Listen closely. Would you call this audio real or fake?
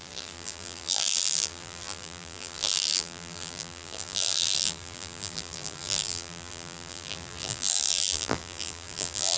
fake